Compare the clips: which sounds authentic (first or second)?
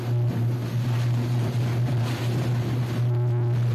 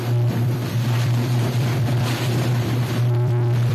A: first